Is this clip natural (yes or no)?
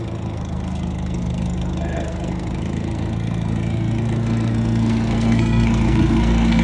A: no